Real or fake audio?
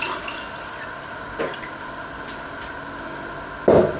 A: real